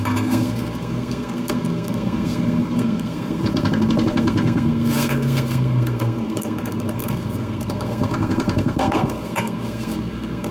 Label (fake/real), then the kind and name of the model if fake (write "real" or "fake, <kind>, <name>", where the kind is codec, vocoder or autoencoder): fake, codec, SNAC